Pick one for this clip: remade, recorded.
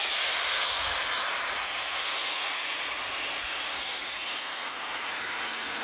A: recorded